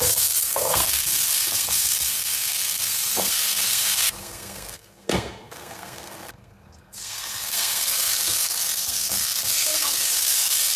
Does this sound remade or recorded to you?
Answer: remade